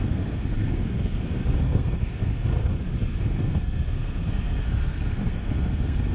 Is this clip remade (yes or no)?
yes